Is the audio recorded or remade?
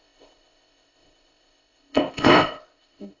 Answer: remade